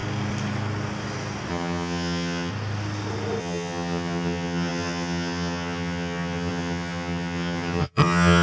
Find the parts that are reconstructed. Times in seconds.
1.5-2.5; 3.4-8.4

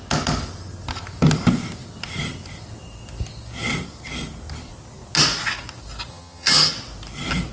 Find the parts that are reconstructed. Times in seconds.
6.1-6.7

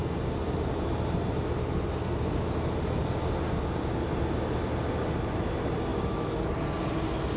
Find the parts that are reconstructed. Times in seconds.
none

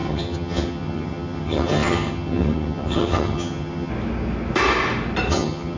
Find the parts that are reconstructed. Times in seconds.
0.0-3.9; 5.3-5.8